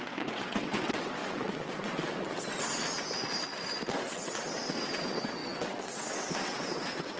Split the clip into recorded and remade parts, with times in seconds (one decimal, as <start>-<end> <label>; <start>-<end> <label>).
0.0-2.8 remade; 2.8-4.1 recorded; 4.1-7.2 remade